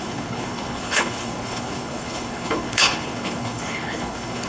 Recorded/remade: remade